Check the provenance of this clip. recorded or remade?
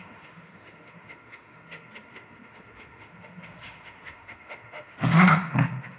remade